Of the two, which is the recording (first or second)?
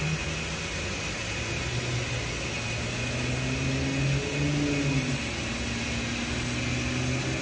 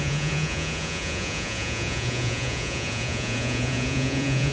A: first